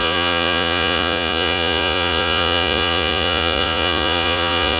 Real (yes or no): no